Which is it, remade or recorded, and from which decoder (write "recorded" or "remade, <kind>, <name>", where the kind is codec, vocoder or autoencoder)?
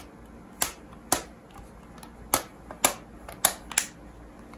recorded